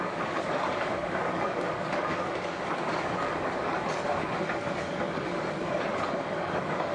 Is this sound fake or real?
fake